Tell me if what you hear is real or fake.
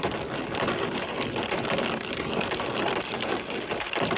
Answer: real